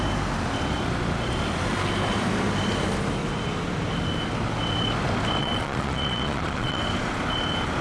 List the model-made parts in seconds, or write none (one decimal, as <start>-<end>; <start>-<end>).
5.4-6.8